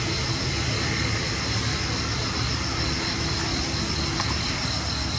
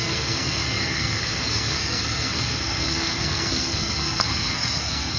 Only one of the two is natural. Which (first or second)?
first